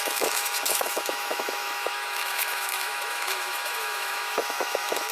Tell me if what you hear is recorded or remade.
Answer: remade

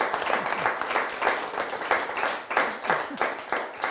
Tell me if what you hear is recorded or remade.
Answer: recorded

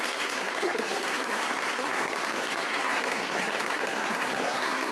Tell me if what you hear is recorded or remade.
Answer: remade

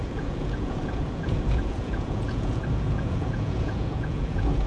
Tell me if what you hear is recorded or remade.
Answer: remade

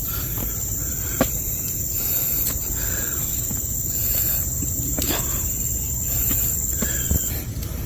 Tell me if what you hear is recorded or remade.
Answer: remade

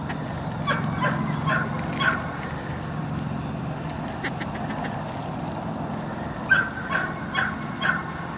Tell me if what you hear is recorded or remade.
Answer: recorded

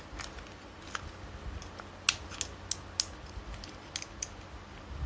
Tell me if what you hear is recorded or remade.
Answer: recorded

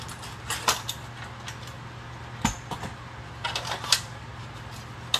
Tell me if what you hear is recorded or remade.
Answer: recorded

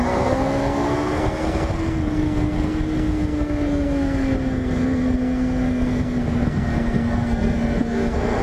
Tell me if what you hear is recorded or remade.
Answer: remade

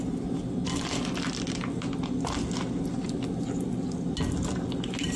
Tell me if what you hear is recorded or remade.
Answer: recorded